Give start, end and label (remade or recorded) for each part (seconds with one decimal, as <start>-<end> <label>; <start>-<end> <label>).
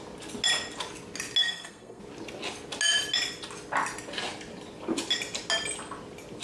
0.0-1.4 recorded; 1.4-2.0 remade; 2.0-6.4 recorded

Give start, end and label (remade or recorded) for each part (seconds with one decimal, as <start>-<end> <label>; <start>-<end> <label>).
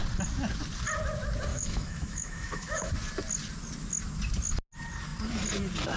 0.0-1.5 recorded; 1.5-2.9 remade; 2.9-6.0 recorded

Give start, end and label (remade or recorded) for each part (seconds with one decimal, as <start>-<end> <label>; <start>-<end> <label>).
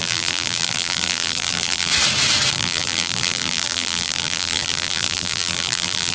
0.0-1.9 remade; 1.9-2.5 recorded; 2.5-6.1 remade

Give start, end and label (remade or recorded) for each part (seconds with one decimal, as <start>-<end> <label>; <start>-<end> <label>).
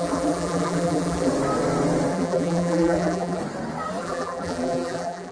0.0-1.3 remade; 1.3-2.1 recorded; 2.1-3.4 remade; 3.4-4.0 recorded; 4.0-5.3 remade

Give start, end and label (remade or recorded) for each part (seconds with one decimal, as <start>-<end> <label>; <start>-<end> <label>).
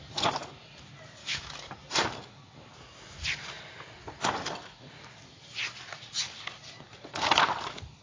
0.0-1.2 recorded; 1.2-1.7 remade; 1.7-8.0 recorded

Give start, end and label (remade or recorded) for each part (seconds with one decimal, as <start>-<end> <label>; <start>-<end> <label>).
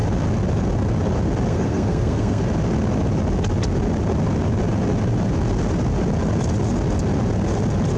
0.0-1.5 recorded; 1.5-2.4 remade; 2.4-8.0 recorded